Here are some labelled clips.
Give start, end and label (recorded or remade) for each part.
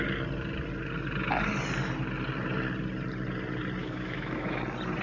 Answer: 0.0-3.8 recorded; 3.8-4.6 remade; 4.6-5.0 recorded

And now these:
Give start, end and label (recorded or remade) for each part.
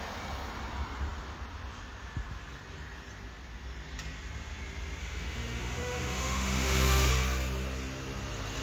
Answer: 0.0-5.0 recorded; 5.0-7.1 remade; 7.1-8.6 recorded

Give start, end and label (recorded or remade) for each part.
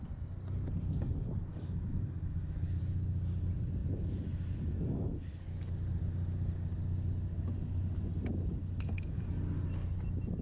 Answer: 0.0-1.5 recorded; 1.5-2.8 remade; 2.8-8.6 recorded; 8.6-9.3 remade; 9.3-10.4 recorded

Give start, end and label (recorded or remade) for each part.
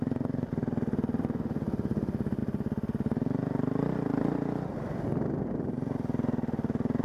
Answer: 0.0-7.0 recorded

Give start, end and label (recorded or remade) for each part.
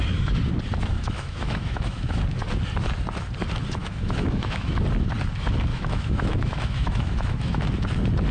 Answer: 0.0-0.9 recorded; 0.9-2.2 remade; 2.2-3.8 recorded; 3.8-4.7 remade; 4.7-5.7 recorded; 5.7-7.7 remade; 7.7-8.3 recorded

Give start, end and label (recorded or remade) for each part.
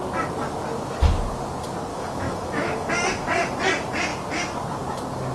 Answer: 0.0-1.9 recorded; 1.9-2.9 remade; 2.9-5.3 recorded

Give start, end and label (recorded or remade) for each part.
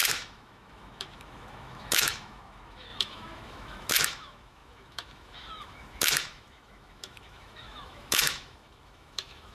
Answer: 0.0-9.5 remade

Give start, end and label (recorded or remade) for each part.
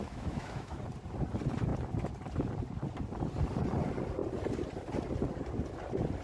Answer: 0.0-0.8 remade; 0.8-6.2 recorded